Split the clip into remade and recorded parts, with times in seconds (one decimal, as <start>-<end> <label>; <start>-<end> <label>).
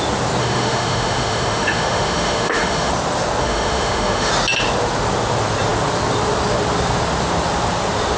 0.0-0.4 recorded; 0.4-2.9 remade; 2.9-3.4 recorded; 3.4-4.3 remade; 4.3-8.2 recorded